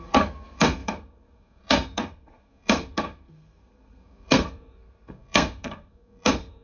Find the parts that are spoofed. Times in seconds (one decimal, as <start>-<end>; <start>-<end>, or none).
0.0-6.6